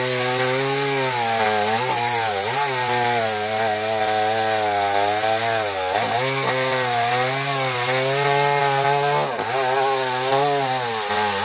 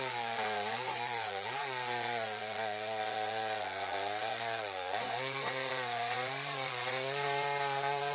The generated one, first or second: second